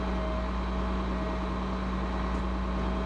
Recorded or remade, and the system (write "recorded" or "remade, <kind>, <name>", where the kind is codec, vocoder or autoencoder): recorded